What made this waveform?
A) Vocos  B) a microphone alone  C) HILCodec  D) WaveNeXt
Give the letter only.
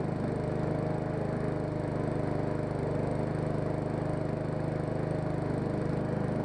B